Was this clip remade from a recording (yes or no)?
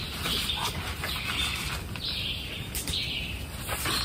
no